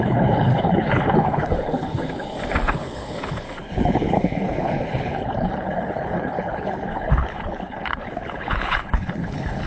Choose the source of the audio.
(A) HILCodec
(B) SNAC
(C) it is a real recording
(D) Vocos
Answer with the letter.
A